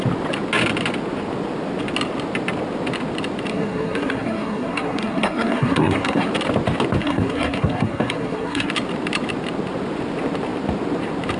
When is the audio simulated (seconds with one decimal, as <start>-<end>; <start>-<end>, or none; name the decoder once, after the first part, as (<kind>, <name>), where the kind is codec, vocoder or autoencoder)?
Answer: 3.5-6.3 (codec, SNAC); 7.0-8.7